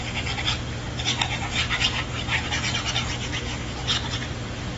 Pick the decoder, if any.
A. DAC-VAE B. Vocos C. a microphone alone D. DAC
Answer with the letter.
C